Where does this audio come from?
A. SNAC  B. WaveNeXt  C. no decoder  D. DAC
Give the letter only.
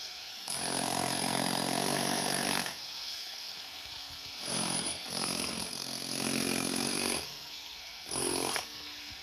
A